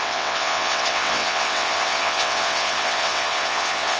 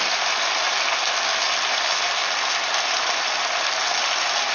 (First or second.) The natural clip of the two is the second